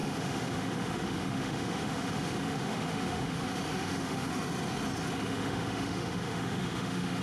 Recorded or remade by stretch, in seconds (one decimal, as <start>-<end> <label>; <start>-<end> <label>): 0.0-4.3 remade; 4.3-5.2 recorded; 5.2-7.2 remade